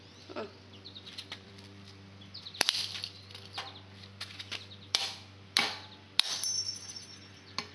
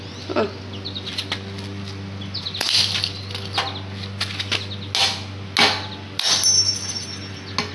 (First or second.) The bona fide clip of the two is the second